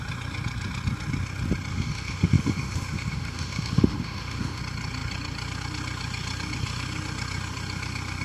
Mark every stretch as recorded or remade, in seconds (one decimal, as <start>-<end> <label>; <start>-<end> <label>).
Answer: 0.0-1.7 recorded; 1.7-4.6 remade; 4.6-8.2 recorded